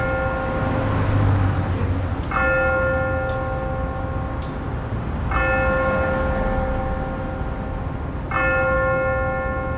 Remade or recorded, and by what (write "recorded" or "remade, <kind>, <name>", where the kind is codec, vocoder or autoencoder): recorded